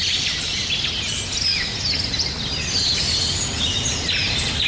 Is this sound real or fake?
real